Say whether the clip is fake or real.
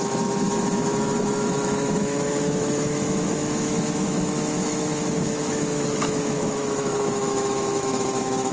fake